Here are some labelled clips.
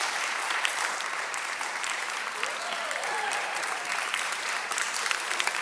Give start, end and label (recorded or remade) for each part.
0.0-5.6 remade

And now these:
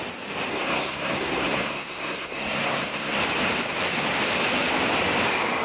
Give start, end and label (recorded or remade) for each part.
0.0-0.5 recorded; 0.5-3.2 remade; 3.2-5.6 recorded